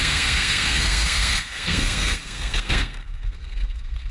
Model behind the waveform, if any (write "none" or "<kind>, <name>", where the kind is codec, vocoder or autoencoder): codec, SNAC